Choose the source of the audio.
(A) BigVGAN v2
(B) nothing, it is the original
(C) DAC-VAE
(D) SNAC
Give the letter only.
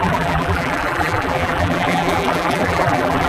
A